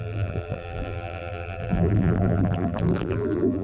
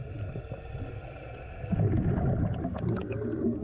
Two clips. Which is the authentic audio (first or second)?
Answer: second